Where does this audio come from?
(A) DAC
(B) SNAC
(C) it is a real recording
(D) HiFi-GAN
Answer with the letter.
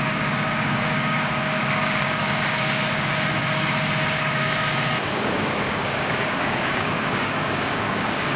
A